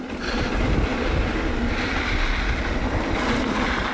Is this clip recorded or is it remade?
recorded